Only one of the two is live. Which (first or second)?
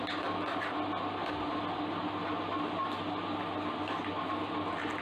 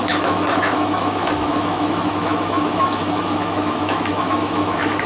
first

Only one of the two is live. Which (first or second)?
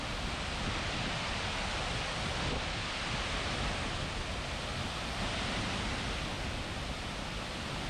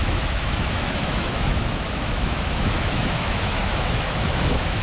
first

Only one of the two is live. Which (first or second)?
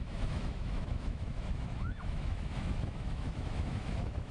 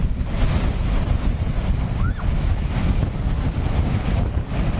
second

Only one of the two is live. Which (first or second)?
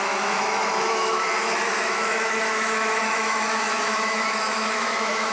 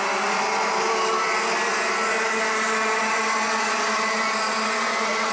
second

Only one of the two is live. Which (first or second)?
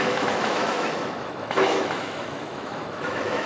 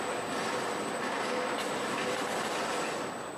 second